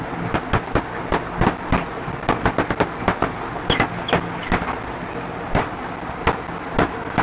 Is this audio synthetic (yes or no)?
no